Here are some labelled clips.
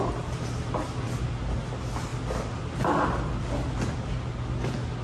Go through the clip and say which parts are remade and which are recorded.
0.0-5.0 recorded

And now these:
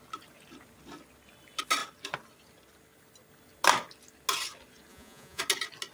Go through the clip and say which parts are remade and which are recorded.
0.0-4.9 recorded; 4.9-5.4 remade; 5.4-5.9 recorded

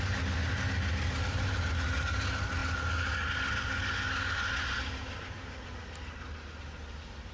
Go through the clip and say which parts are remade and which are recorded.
0.0-7.3 recorded

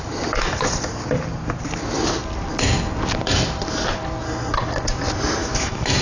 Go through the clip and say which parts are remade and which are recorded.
0.0-5.4 recorded; 5.4-6.0 remade